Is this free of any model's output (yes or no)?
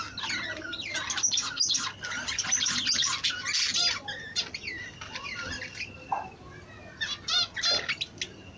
yes